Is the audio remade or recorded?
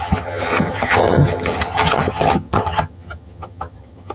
remade